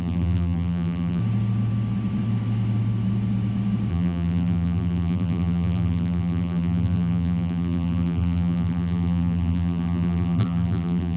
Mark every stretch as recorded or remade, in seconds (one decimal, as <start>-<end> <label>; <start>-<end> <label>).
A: 0.0-1.2 remade; 1.2-3.9 recorded; 3.9-11.2 remade